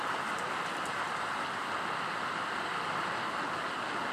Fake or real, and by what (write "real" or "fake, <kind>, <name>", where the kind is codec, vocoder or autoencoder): real